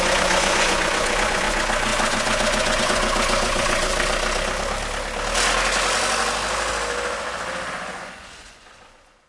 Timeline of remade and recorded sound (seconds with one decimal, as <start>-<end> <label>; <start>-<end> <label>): 0.0-3.9 remade; 3.9-7.7 recorded; 7.7-9.3 remade